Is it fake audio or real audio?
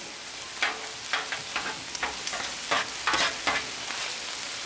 real